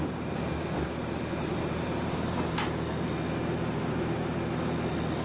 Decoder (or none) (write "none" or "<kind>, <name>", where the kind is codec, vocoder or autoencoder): none